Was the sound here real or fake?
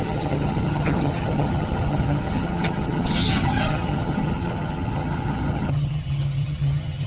fake